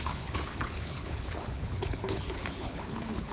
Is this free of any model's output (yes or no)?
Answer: no